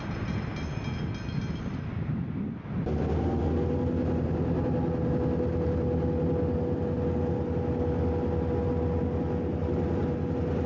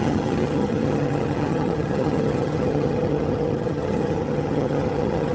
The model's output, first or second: second